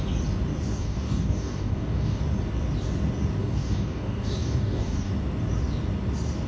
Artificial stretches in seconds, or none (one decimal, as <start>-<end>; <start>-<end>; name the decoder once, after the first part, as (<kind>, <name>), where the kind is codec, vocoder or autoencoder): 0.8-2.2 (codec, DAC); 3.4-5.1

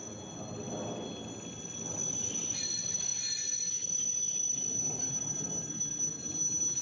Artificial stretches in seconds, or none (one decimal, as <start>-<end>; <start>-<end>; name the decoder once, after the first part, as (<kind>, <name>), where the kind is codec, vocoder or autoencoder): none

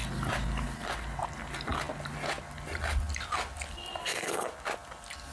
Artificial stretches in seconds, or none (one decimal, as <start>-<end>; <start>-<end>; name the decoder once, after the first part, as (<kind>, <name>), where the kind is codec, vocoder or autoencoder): 4.0-4.5 (codec, SNAC)